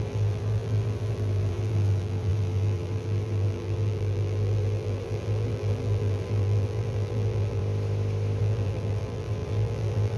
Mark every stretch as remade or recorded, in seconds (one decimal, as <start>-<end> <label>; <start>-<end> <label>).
0.0-7.6 remade; 7.6-8.4 recorded; 8.4-10.2 remade